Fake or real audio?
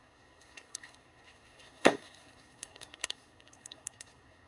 fake